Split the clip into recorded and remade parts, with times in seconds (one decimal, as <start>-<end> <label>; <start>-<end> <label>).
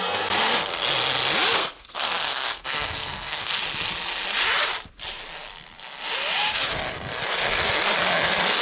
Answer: 0.0-1.6 recorded; 1.6-3.5 remade; 3.5-8.6 recorded